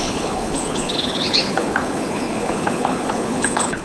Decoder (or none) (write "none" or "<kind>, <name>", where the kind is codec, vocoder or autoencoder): codec, HILCodec